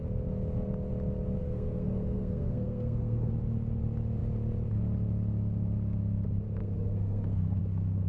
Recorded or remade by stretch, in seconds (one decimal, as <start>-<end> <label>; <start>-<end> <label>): 0.0-1.4 recorded; 1.4-3.3 remade; 3.3-6.6 recorded; 6.6-7.6 remade; 7.6-8.1 recorded